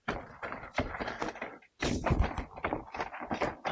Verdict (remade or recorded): recorded